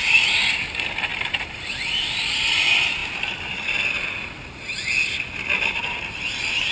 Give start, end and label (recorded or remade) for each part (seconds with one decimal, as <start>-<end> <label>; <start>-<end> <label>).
0.0-1.1 recorded; 1.1-2.0 remade; 2.0-6.7 recorded